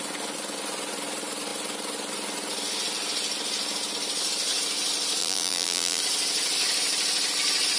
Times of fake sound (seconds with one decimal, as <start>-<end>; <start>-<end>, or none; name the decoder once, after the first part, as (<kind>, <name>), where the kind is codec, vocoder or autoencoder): 5.2-6.0 (vocoder, BigVGAN v2)